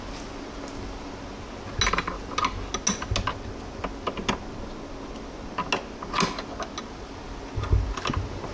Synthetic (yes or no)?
no